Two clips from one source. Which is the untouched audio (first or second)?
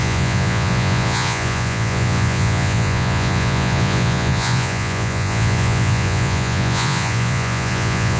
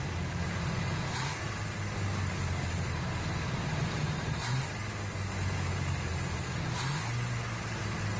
second